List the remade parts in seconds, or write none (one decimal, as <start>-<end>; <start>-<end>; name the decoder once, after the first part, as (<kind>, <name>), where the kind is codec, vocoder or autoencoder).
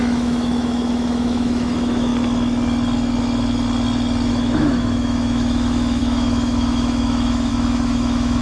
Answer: 0.0-2.1 (autoencoder, DAC-VAE); 4.3-8.4